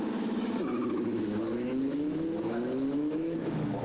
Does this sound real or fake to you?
fake